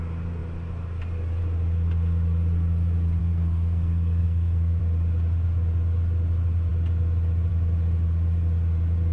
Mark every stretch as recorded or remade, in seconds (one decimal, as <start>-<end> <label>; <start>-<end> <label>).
0.0-3.2 recorded; 3.2-4.8 remade; 4.8-9.1 recorded